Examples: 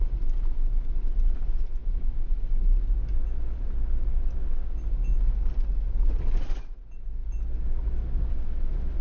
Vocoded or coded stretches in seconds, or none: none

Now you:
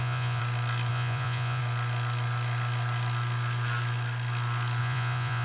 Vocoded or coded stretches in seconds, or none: 0.0-0.4 (vocoder, Vocos); 0.9-1.6; 4.8-5.4